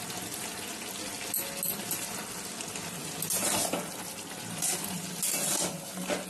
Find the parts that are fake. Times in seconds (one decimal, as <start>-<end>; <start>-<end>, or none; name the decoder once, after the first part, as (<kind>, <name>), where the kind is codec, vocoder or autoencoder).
none